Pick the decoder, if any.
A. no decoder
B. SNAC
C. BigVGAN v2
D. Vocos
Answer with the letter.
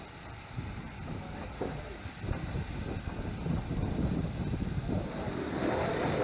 A